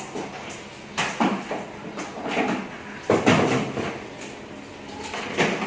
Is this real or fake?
real